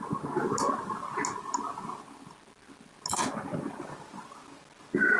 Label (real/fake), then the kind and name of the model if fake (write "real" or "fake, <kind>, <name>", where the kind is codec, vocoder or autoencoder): real